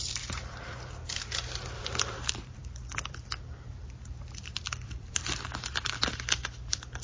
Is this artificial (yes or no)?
yes